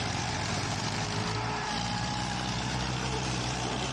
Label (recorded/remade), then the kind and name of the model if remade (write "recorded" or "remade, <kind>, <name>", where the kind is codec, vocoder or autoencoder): remade, vocoder, BigVGAN v2